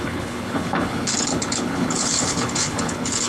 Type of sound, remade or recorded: remade